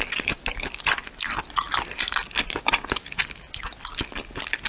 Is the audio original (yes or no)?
yes